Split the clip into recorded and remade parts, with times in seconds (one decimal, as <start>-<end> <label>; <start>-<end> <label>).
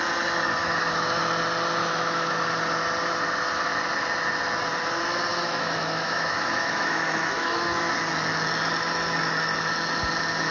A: 0.0-0.6 recorded; 0.6-1.2 remade; 1.2-1.8 recorded; 1.8-2.4 remade; 2.4-5.3 recorded; 5.3-7.9 remade; 7.9-10.5 recorded